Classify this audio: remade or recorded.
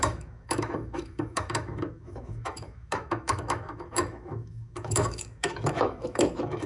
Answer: remade